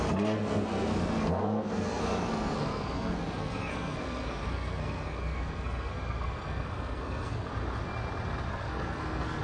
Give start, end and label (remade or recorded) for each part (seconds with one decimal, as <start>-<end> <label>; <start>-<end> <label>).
0.0-7.5 remade; 7.5-8.5 recorded; 8.5-9.4 remade